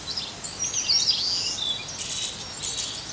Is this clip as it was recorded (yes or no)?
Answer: yes